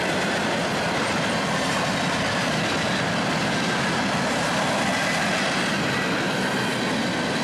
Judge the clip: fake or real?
real